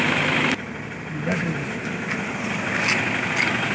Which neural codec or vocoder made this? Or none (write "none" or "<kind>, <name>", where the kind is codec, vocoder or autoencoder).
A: none